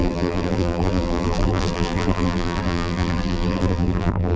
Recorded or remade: remade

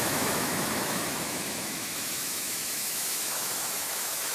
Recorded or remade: remade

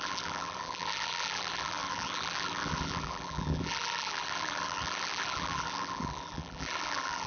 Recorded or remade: remade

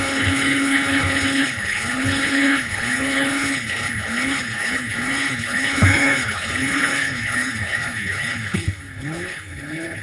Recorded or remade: remade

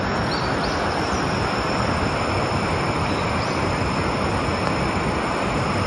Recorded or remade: recorded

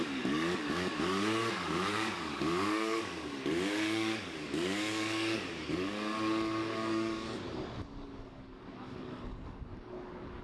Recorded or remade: remade